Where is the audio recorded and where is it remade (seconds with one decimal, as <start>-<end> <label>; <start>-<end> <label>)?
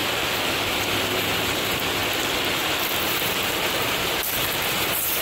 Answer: 0.0-0.9 recorded; 0.9-2.0 remade; 2.0-3.0 recorded; 3.0-5.2 remade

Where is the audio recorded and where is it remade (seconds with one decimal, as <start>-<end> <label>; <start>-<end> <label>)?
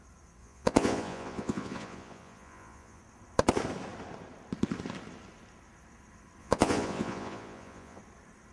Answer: 0.0-0.4 recorded; 0.4-3.0 remade; 3.0-6.4 recorded; 6.4-8.0 remade; 8.0-8.5 recorded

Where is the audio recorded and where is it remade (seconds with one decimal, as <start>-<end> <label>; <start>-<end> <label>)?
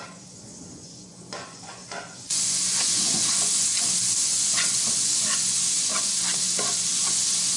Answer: 0.0-3.7 remade; 3.7-4.2 recorded; 4.2-5.9 remade; 5.9-6.6 recorded; 6.6-7.6 remade